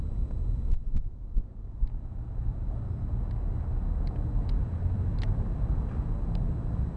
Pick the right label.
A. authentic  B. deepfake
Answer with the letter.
A